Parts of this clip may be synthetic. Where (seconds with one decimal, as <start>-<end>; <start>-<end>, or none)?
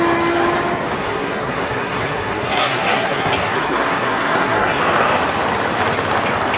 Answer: 1.0-4.8